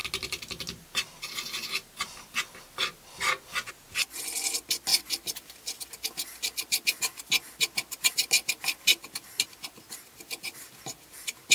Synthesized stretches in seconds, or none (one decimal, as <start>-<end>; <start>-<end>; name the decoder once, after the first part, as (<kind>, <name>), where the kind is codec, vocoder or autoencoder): none